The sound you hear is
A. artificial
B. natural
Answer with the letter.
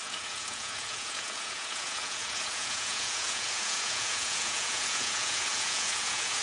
A